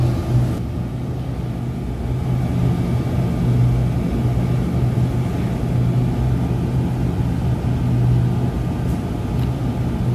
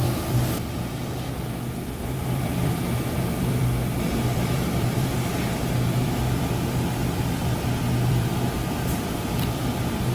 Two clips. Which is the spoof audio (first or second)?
second